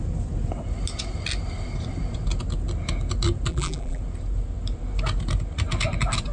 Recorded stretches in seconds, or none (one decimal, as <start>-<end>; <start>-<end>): 0.0-3.5; 4.0-6.3